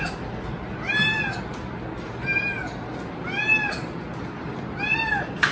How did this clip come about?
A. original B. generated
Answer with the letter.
A